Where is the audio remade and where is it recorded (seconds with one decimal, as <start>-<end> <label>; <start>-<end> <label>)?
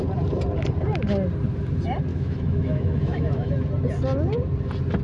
0.0-2.1 recorded; 2.1-3.5 remade; 3.5-5.0 recorded